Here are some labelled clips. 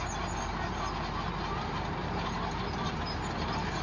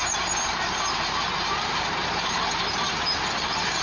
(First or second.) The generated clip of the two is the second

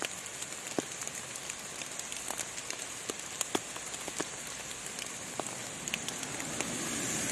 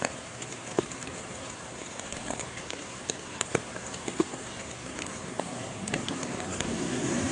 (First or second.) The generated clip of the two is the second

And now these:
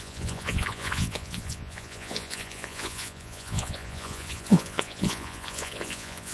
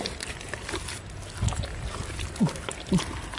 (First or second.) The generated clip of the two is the first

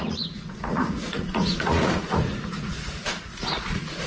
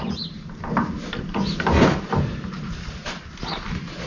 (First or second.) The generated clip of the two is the first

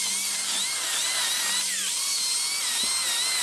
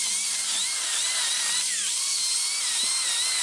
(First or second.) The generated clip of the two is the second